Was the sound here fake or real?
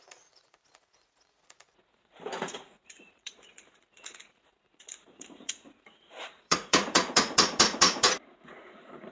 fake